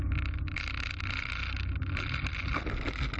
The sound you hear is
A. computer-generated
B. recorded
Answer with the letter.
B